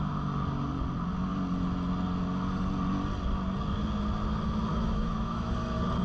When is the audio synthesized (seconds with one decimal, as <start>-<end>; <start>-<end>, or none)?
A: 4.7-5.5